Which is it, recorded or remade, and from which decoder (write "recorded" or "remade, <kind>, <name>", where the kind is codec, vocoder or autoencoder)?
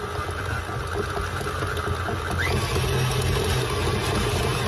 recorded